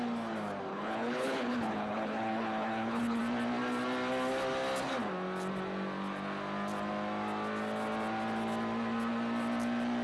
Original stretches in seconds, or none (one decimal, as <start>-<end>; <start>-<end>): 0.0-0.7; 3.2-10.0

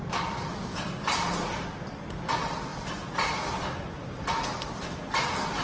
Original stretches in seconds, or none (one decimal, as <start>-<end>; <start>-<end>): 0.0-5.6

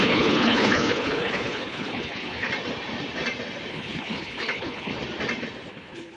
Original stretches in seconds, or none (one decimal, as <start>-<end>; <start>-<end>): 2.5-3.7; 4.9-5.7

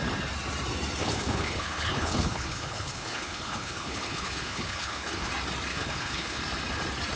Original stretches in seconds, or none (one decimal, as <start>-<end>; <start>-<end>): 0.0-1.0; 5.3-5.7; 6.4-7.2

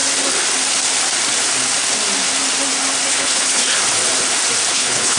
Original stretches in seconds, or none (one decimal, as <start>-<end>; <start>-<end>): 0.0-3.1; 3.6-4.7

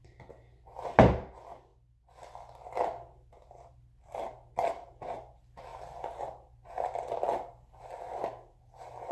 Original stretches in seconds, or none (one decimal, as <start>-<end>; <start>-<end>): 0.0-9.1

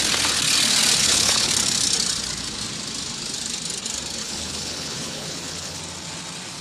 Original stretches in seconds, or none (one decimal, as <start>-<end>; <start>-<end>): 0.0-1.0; 1.5-4.2; 5.8-6.6